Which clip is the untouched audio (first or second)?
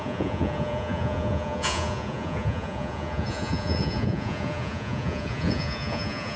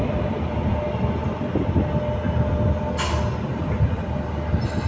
second